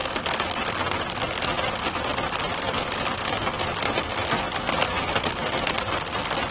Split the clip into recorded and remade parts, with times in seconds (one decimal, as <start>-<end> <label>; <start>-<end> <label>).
0.0-4.9 recorded; 4.9-5.5 remade; 5.5-6.5 recorded

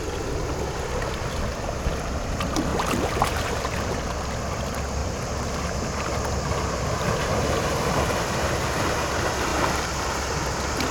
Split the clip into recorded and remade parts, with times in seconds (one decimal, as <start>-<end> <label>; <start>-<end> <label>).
0.0-2.7 recorded; 2.7-3.6 remade; 3.6-5.0 recorded; 5.0-8.5 remade; 8.5-9.5 recorded; 9.5-10.2 remade; 10.2-10.9 recorded